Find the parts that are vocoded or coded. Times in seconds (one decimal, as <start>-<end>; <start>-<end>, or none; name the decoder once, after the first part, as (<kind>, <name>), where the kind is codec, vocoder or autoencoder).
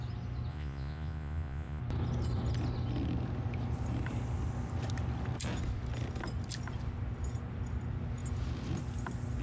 0.5-1.8 (vocoder, Vocos)